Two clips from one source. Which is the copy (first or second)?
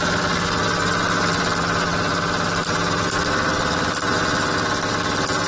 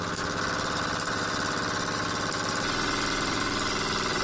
second